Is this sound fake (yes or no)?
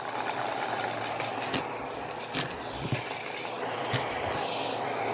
no